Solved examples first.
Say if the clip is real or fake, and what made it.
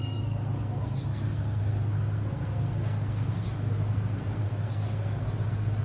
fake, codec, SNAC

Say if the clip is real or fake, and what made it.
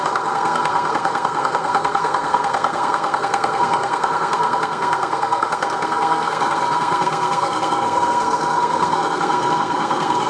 fake, codec, SNAC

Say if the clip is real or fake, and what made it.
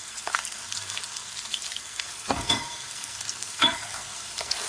fake, codec, SNAC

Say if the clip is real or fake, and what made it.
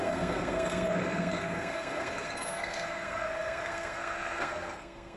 fake, codec, SNAC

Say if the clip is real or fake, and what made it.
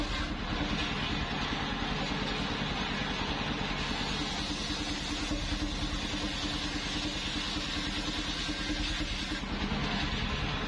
real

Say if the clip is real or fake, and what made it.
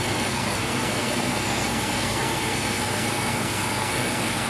fake, codec, SNAC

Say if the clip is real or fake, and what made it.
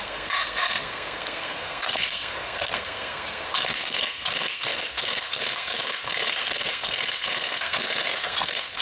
fake, codec, SNAC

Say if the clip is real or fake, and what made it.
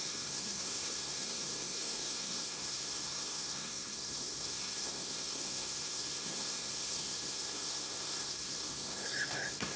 fake, codec, SNAC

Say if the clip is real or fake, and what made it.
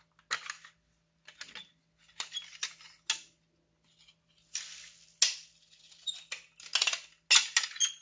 real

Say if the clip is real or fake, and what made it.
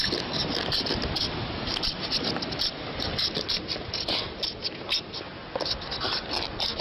real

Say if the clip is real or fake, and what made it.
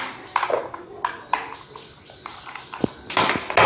real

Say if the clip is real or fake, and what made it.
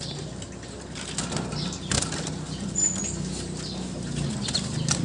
real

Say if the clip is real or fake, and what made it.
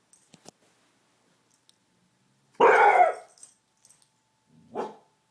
real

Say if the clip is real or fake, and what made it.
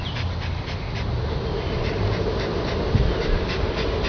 real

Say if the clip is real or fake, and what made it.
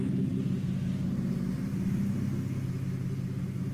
real